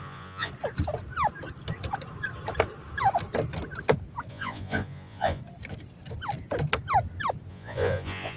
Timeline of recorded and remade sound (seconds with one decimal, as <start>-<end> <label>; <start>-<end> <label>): 0.0-0.5 remade; 0.5-4.3 recorded; 4.3-5.4 remade; 5.4-7.5 recorded; 7.5-8.4 remade